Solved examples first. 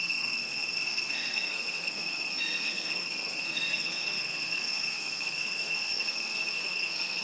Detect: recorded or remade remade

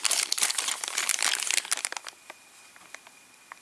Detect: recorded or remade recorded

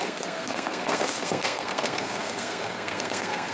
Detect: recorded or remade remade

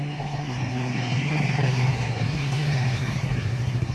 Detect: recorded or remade remade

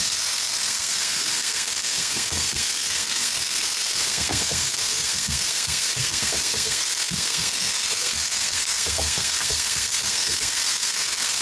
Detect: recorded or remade remade